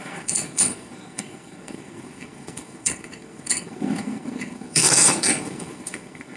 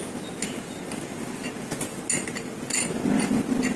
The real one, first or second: second